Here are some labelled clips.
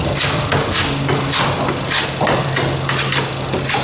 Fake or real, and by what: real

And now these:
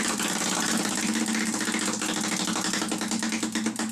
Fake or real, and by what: real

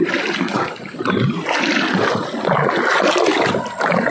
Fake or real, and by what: real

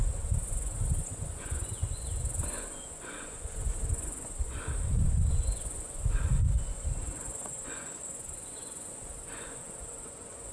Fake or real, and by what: fake, vocoder, Vocos